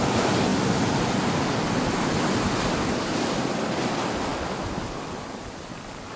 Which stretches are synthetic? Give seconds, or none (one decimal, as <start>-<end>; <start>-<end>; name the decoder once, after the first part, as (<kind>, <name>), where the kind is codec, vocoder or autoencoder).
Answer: none